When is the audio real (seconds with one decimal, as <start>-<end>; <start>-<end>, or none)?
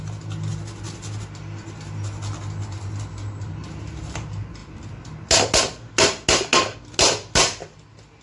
0.0-8.2